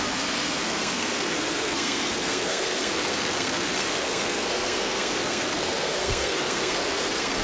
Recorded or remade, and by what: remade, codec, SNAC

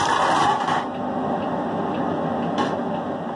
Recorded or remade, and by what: recorded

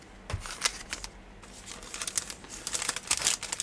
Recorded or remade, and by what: recorded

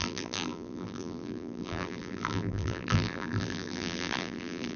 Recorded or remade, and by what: remade, vocoder, BigVGAN v2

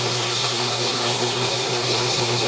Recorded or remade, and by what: remade, codec, SNAC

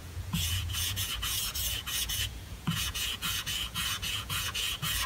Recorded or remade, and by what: remade, vocoder, Vocos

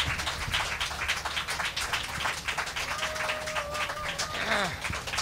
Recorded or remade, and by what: recorded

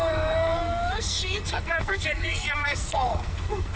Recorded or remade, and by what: remade, codec, SNAC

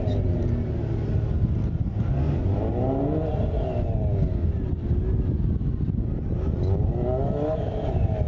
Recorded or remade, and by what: recorded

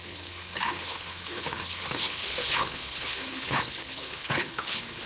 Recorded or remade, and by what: remade, codec, HILCodec